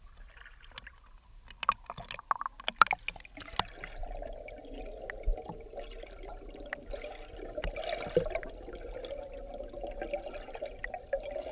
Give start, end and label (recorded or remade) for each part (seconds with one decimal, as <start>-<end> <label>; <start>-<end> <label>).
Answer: 0.0-11.5 recorded